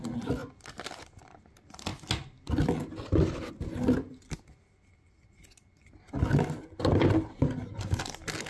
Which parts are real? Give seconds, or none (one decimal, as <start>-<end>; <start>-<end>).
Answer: 0.0-8.5